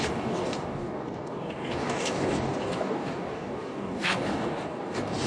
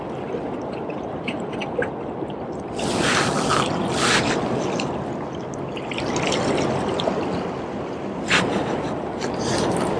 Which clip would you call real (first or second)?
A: second